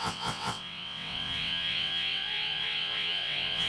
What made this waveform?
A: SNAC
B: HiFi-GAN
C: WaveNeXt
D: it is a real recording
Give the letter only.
C